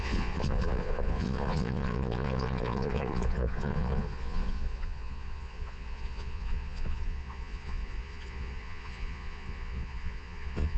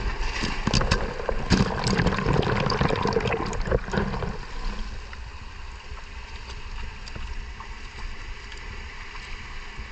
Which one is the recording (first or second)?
second